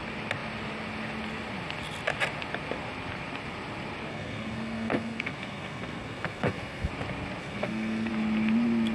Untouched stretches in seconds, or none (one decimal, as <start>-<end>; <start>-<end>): 0.0-4.1; 6.9-7.4; 8.1-8.9